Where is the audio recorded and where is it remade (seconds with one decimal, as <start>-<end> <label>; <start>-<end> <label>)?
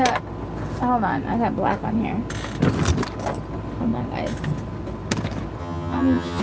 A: 0.0-5.6 recorded; 5.6-6.4 remade